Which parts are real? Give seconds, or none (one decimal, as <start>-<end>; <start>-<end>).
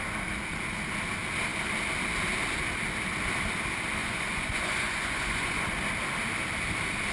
0.0-4.0; 5.6-7.1